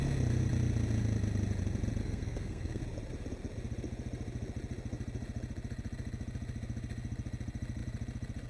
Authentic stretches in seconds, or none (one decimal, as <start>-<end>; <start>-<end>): 0.0-2.0; 2.8-8.5